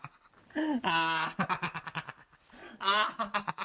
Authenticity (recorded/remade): recorded